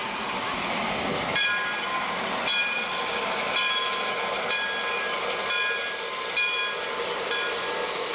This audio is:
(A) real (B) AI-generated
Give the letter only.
A